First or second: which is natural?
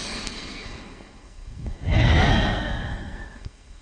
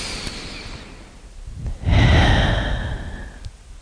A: second